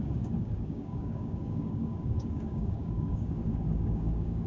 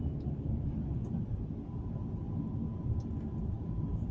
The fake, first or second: first